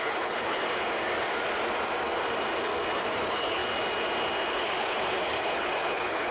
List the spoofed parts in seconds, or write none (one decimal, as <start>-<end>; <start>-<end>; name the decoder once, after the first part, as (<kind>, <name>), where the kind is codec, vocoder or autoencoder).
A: 0.0-0.6 (codec, HILCodec); 3.0-3.6; 4.5-6.3